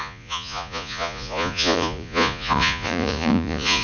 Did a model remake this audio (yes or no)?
yes